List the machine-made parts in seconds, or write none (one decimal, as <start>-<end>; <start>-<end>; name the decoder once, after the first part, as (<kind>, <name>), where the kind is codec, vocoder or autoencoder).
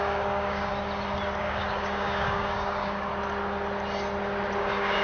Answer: 0.0-0.7 (codec, DAC); 1.4-3.1; 4.6-5.0